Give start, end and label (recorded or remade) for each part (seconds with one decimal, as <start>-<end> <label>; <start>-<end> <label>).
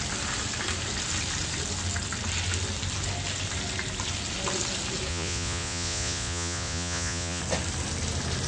0.0-5.1 recorded; 5.1-7.4 remade; 7.4-8.5 recorded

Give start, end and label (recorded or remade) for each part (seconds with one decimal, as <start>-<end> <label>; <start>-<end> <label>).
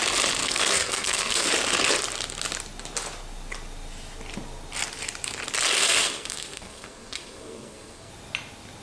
0.0-0.4 recorded; 0.4-1.5 remade; 1.5-5.8 recorded; 5.8-8.1 remade; 8.1-8.8 recorded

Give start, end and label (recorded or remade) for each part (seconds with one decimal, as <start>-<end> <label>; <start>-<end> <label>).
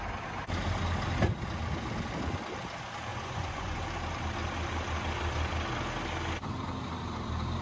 0.0-3.1 recorded; 3.1-3.8 remade; 3.8-7.6 recorded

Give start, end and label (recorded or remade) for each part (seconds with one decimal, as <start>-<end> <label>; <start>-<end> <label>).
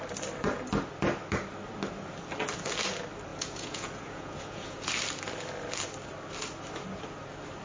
0.0-3.3 recorded; 3.3-4.9 remade; 4.9-7.6 recorded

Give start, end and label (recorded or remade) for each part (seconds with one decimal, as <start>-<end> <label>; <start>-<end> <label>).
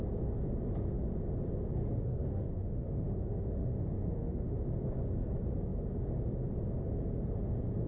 0.0-1.8 recorded; 1.8-4.5 remade; 4.5-7.9 recorded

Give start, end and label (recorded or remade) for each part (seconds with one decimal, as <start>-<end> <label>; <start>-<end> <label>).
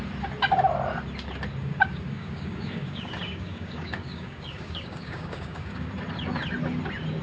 0.0-1.6 recorded; 1.6-5.9 remade; 5.9-7.2 recorded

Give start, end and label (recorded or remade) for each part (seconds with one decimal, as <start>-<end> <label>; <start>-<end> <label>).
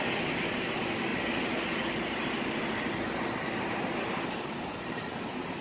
0.0-5.6 recorded